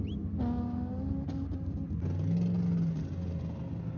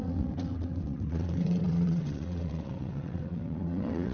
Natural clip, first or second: first